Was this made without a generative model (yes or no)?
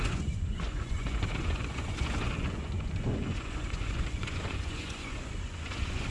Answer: no